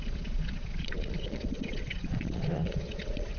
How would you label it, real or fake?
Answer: fake